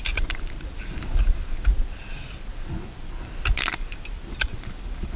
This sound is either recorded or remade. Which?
remade